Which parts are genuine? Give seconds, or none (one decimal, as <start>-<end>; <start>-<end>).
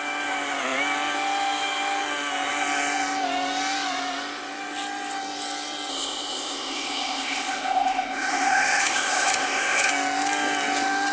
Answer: 0.0-5.9; 9.9-11.1